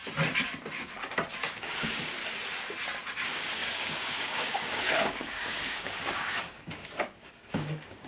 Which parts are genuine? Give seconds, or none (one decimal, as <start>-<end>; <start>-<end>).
0.0-1.5; 2.2-3.1

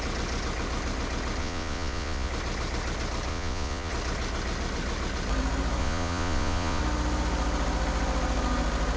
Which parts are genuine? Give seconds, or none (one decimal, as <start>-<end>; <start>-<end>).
0.0-1.4; 2.3-3.3; 3.9-5.8; 6.8-9.0